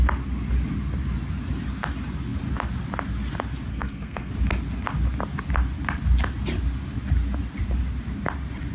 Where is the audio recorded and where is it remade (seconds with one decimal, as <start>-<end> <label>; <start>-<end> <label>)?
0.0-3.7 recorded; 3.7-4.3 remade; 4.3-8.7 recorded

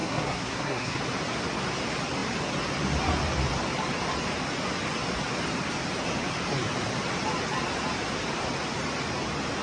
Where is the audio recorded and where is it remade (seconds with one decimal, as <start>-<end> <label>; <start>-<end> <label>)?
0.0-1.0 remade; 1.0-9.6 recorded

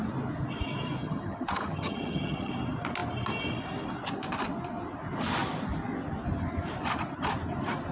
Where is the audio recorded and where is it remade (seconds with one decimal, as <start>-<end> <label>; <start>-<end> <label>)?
0.0-1.0 recorded; 1.0-2.5 remade; 2.5-7.9 recorded

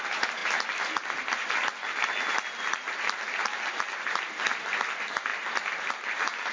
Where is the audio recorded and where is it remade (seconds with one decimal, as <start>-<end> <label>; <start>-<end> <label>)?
0.0-6.5 recorded

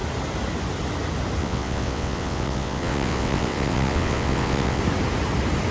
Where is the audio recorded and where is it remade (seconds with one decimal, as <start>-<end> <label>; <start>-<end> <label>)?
0.0-1.4 recorded; 1.4-4.8 remade; 4.8-5.7 recorded

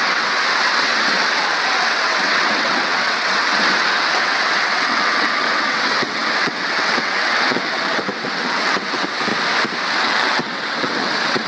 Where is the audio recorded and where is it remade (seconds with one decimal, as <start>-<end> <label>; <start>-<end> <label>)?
0.0-9.3 remade; 9.3-9.9 recorded; 9.9-11.5 remade

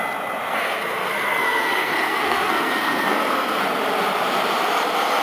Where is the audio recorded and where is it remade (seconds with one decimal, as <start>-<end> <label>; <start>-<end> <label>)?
0.0-0.5 recorded; 0.5-3.6 remade; 3.6-5.2 recorded